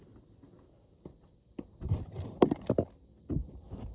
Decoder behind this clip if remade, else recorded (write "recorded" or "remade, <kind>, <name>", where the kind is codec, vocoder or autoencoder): recorded